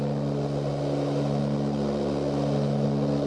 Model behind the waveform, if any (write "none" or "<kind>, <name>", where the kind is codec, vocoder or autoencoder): none